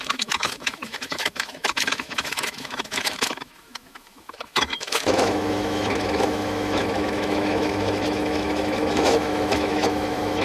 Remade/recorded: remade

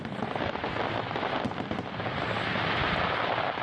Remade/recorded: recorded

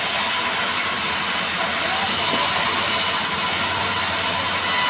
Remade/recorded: recorded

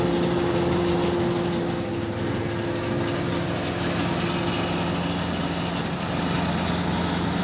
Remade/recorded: recorded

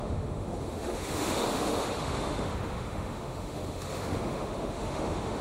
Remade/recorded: remade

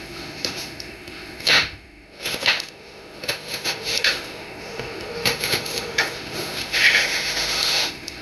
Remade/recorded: remade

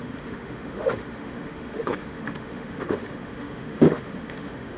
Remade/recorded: remade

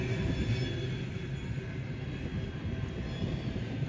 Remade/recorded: recorded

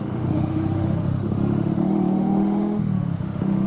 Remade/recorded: remade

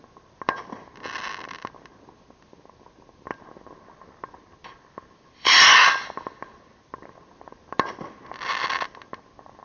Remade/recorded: recorded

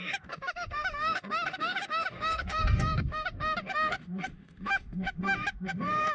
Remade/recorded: remade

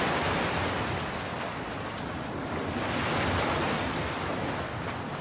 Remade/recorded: recorded